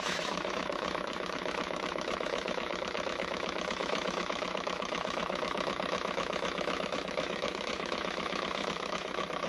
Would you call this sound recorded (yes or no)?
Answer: no